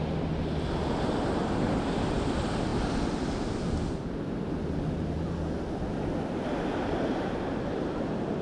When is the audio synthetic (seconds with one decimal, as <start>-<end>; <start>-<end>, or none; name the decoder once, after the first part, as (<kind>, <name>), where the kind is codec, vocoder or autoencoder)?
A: none